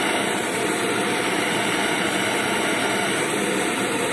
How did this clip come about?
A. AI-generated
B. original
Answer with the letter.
B